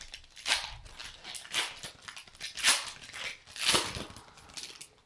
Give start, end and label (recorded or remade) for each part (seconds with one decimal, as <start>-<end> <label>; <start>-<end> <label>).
0.0-5.1 recorded